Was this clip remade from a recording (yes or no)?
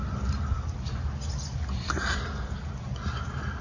no